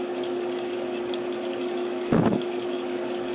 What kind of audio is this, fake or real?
fake